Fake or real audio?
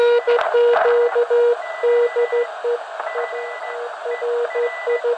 real